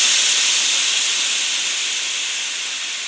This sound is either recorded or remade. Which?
recorded